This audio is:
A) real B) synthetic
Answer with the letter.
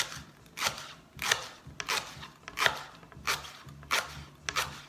A